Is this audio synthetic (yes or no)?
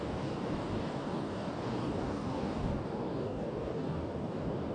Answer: yes